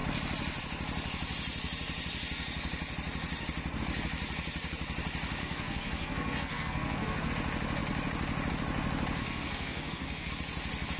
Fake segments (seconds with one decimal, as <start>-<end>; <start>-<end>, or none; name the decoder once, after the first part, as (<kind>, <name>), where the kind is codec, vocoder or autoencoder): 5.4-7.3 (codec, SNAC); 9.2-10.3